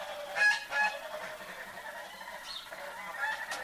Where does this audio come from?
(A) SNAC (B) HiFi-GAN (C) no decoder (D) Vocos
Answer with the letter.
C